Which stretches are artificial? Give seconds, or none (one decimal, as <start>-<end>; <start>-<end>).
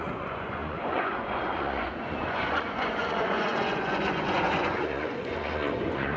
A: 0.0-6.2